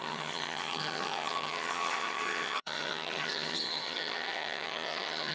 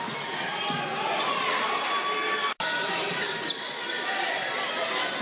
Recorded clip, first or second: second